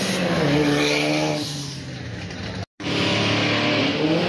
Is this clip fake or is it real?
real